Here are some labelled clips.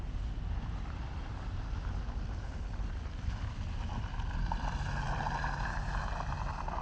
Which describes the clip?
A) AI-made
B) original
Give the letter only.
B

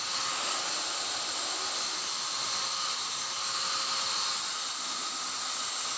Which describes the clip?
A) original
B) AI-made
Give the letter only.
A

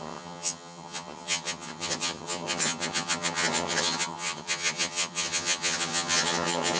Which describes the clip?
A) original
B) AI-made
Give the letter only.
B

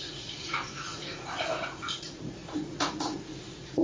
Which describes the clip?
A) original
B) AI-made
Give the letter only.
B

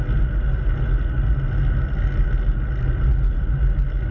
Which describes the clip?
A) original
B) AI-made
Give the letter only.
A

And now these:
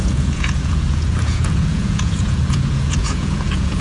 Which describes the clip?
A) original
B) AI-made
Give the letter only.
B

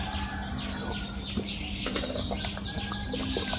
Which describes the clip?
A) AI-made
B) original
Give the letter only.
B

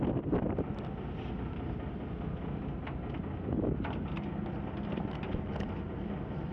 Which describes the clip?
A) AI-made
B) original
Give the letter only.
B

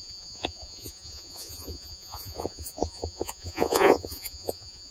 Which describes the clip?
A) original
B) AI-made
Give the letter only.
B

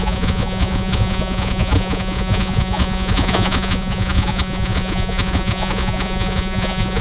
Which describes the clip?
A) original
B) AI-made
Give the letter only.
B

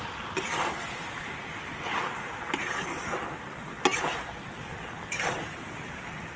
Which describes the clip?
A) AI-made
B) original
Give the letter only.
B